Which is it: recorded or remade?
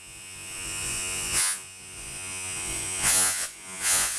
remade